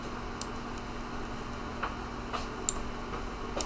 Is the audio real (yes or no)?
yes